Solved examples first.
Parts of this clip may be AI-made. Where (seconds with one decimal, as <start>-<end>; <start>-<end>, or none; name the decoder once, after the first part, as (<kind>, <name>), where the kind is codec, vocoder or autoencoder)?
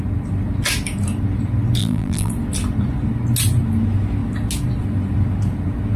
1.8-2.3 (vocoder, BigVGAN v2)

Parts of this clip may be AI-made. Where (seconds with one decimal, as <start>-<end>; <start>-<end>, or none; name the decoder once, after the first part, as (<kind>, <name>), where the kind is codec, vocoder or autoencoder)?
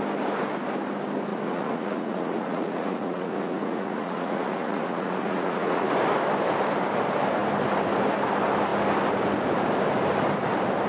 1.3-5.9 (vocoder, Vocos)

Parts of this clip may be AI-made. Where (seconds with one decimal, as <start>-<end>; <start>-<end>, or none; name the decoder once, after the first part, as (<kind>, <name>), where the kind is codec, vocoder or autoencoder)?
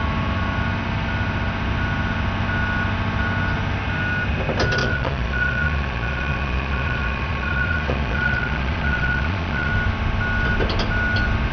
4.8-9.7 (vocoder, Vocos)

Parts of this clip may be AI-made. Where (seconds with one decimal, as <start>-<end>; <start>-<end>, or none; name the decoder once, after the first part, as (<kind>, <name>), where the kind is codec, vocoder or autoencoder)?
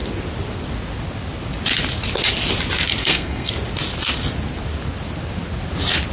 3.0-3.5 (codec, SNAC)